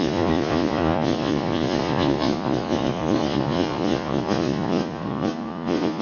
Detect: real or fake fake